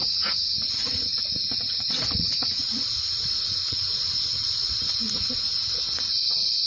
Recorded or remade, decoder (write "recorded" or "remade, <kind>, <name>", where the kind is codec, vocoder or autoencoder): remade, vocoder, Vocos